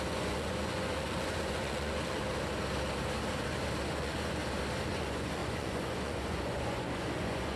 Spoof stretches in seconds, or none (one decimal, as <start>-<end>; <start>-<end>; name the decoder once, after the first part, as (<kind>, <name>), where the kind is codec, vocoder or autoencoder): 0.0-2.2 (vocoder, Vocos); 3.9-4.4; 4.9-7.6